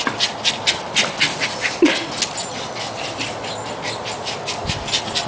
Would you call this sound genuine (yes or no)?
yes